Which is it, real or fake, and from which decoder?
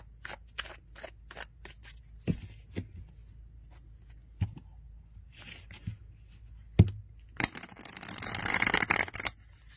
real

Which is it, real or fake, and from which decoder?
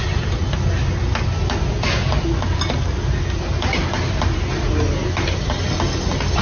real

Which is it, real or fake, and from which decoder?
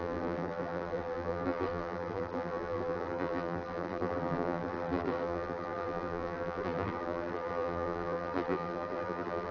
fake, vocoder, BigVGAN v2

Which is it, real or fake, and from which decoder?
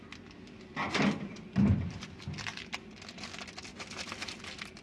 real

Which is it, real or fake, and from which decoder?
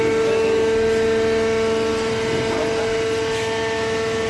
real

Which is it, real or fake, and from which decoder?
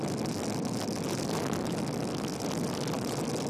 real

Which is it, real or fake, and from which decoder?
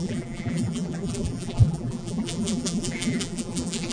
fake, vocoder, BigVGAN v2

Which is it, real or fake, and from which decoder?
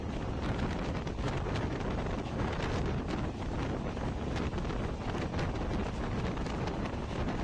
real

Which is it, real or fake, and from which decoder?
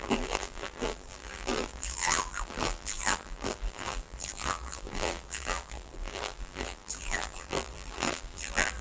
fake, vocoder, BigVGAN v2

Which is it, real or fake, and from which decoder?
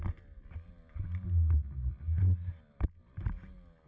real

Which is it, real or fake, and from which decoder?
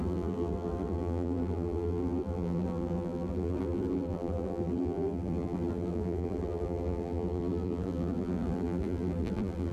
fake, vocoder, BigVGAN v2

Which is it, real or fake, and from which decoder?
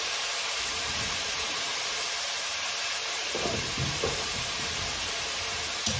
fake, vocoder, BigVGAN v2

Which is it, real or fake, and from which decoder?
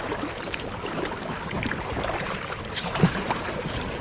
fake, vocoder, BigVGAN v2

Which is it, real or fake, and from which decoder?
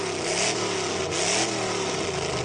real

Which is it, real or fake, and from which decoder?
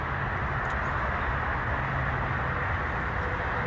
real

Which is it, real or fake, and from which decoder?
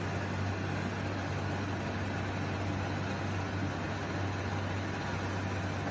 real